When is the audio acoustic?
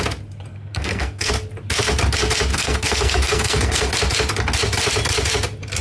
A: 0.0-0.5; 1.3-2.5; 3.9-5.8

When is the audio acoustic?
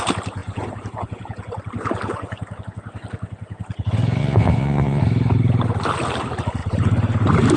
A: 0.0-4.2; 5.0-7.6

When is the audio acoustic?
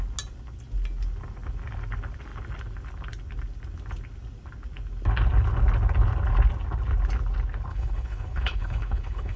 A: 0.0-7.7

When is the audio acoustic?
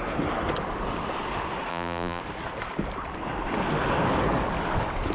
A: 0.0-1.7; 2.2-5.1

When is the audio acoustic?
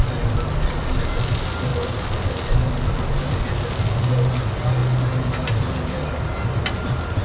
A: 0.0-7.2